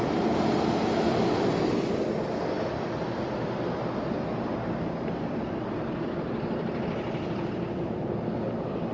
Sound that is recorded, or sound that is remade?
recorded